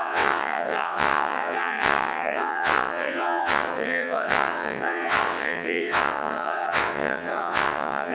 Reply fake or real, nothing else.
fake